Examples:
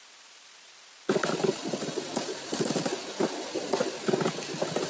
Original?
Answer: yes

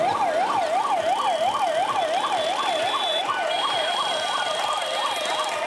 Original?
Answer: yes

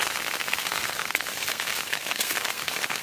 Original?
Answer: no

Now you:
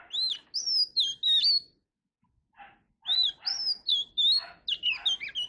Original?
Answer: yes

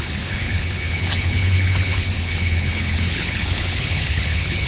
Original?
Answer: no